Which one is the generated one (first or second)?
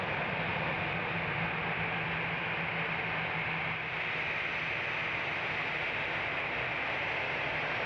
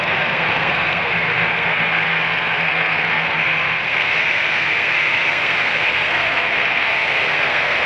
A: second